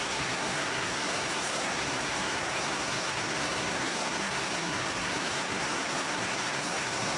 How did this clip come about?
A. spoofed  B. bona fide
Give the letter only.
A